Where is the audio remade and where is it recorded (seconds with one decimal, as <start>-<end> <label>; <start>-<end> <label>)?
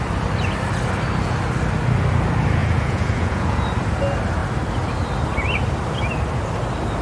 0.0-2.6 recorded; 2.6-3.6 remade; 3.6-7.0 recorded